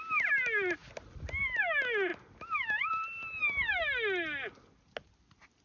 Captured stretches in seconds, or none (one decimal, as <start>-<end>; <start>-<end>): 0.0-5.6